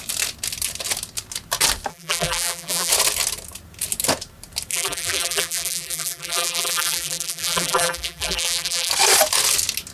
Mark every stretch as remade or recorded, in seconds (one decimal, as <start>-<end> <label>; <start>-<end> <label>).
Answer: 0.0-1.9 recorded; 1.9-2.9 remade; 2.9-4.7 recorded; 4.7-8.9 remade; 8.9-9.9 recorded